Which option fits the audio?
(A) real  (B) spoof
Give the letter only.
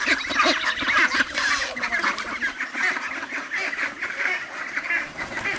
A